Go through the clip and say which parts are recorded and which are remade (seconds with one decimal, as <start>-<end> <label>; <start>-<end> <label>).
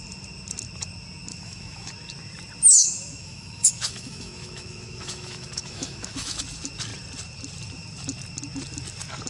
0.0-1.3 recorded; 1.3-1.9 remade; 1.9-2.8 recorded; 2.8-6.4 remade; 6.4-9.3 recorded